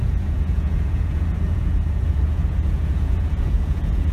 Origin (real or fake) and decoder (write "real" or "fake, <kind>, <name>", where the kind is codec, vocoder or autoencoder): fake, vocoder, Vocos